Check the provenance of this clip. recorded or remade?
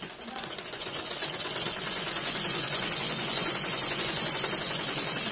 remade